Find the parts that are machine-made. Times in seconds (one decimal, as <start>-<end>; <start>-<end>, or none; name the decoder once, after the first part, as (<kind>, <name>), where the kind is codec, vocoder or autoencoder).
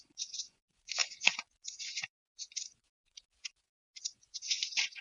0.0-5.0 (vocoder, Vocos)